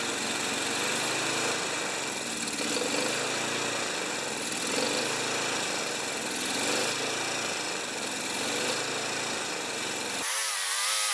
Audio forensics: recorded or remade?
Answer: recorded